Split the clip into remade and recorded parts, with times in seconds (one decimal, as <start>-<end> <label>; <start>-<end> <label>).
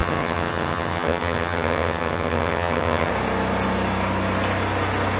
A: 0.0-3.1 remade; 3.1-5.2 recorded